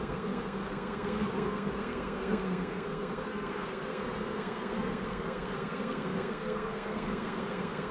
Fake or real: fake